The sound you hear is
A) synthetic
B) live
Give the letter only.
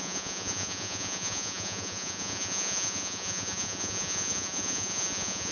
A